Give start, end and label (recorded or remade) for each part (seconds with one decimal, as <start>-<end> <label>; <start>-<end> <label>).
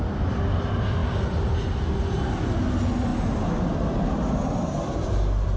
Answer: 0.0-5.6 recorded